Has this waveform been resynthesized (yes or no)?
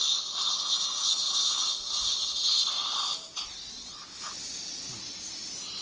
no